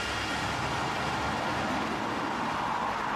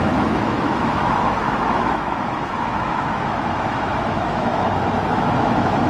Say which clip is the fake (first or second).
second